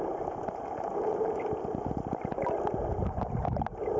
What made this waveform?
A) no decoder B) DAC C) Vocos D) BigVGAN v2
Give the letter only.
A